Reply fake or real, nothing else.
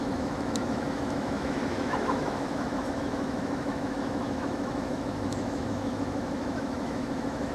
fake